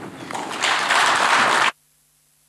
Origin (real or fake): real